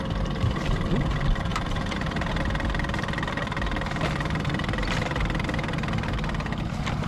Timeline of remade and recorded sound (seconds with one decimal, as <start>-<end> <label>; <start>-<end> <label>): 0.0-1.5 recorded; 1.5-2.4 remade; 2.4-7.1 recorded